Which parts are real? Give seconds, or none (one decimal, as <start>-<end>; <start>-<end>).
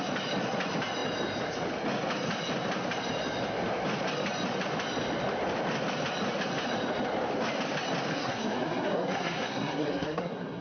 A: 0.0-8.1